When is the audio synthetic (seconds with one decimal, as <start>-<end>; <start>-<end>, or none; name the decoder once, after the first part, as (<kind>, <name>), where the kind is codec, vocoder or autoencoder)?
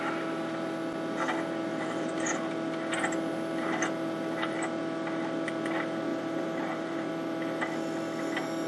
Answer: 1.7-2.3 (vocoder, BigVGAN v2); 6.1-7.1